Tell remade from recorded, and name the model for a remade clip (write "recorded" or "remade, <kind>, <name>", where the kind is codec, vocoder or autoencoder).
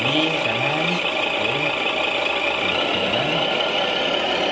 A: recorded